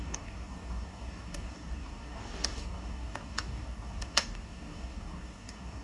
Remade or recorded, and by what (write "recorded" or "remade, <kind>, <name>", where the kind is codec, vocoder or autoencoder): remade, codec, DAC